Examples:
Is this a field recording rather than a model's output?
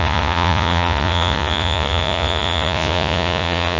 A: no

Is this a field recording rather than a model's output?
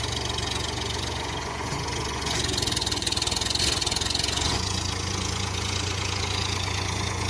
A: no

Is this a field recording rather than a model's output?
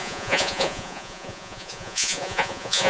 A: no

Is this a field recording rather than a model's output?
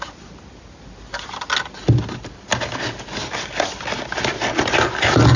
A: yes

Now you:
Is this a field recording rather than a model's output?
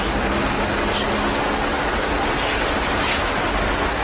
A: yes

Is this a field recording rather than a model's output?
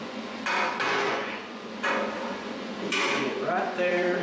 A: no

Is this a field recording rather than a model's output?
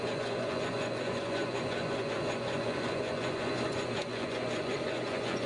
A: no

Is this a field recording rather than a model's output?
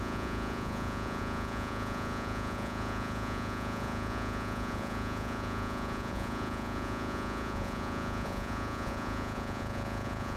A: no